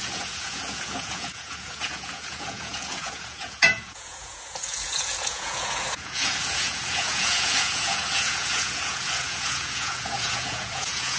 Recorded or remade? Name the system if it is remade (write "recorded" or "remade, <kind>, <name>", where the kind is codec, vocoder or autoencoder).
remade, vocoder, Vocos